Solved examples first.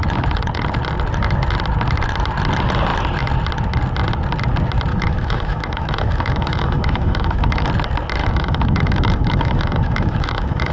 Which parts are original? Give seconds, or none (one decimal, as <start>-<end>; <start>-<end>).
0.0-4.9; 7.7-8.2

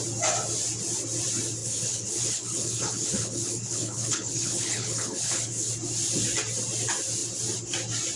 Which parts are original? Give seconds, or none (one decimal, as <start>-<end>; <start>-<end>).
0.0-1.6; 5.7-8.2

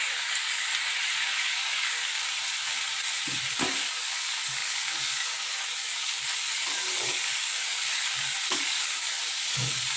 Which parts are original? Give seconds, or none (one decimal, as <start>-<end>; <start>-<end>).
0.7-1.2; 2.2-3.5

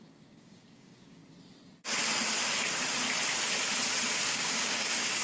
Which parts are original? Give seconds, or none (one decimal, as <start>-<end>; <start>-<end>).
1.2-4.3

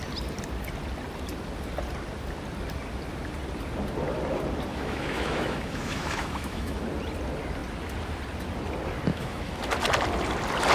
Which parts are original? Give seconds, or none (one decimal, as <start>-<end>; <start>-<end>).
0.0-4.7; 6.8-9.1; 9.6-10.7

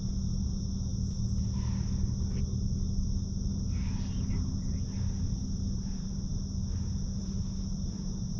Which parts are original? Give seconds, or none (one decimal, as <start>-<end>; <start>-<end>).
0.0-8.4

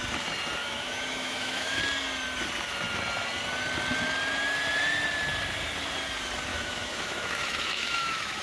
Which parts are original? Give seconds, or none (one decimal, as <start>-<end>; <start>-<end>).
0.0-0.6; 1.8-6.5

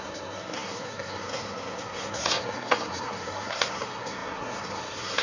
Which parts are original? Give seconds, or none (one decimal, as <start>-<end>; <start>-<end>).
none